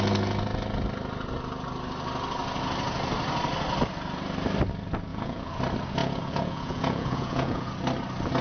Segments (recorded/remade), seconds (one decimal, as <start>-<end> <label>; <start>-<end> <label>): 0.0-5.1 recorded; 5.1-5.6 remade; 5.6-6.0 recorded; 6.0-7.7 remade; 7.7-8.4 recorded